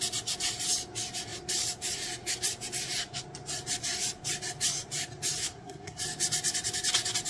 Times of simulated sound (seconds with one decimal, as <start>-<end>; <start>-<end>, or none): 5.4-6.0